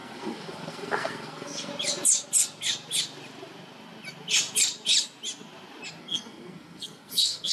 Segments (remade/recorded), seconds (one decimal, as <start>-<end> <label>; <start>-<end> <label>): 0.0-1.7 remade; 1.7-6.0 recorded; 6.0-7.5 remade